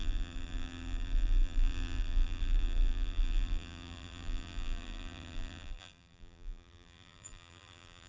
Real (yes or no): no